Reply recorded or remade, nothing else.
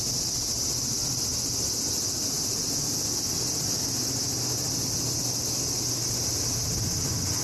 recorded